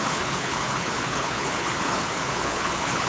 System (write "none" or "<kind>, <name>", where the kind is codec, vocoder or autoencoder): codec, HILCodec